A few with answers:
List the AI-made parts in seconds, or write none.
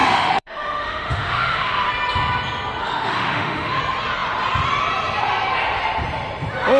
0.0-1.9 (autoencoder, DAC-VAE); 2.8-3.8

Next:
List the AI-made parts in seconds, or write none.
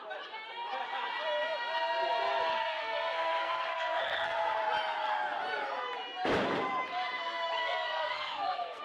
2.5-4.6 (codec, SNAC); 7.6-8.8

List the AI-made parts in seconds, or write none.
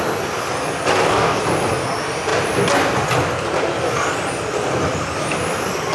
0.9-1.4 (codec, DAC)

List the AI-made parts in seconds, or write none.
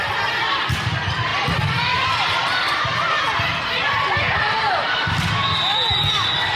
none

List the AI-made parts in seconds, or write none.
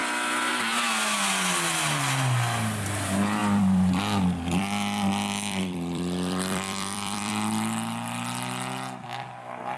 3.4-7.3 (vocoder, BigVGAN v2)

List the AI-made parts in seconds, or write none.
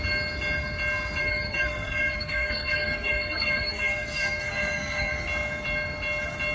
1.2-5.1 (codec, SNAC)